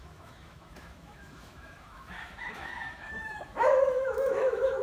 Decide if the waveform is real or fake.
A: fake